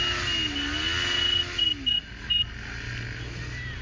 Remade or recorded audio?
recorded